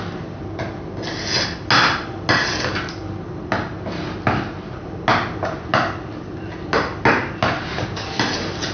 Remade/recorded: recorded